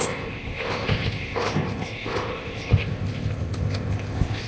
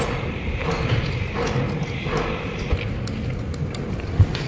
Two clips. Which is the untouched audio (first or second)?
second